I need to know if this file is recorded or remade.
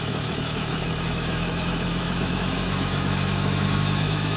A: remade